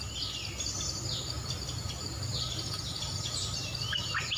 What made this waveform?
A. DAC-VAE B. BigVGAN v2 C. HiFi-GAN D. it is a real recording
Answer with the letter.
D